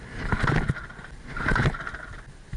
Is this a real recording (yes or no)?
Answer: yes